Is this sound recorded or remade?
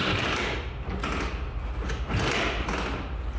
recorded